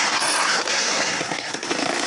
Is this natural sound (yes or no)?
no